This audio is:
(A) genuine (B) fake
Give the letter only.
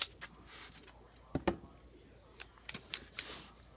A